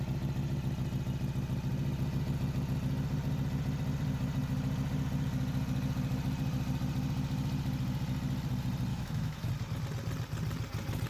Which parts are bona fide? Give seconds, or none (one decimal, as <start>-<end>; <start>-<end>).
0.0-8.9; 9.5-11.1